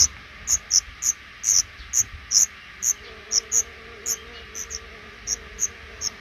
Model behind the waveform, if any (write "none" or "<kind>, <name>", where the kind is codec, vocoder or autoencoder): none